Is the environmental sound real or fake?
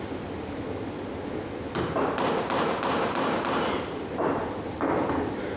real